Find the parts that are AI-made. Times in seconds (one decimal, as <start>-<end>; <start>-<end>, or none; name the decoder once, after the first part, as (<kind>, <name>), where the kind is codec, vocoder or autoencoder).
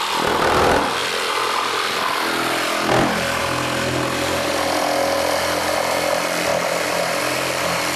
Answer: none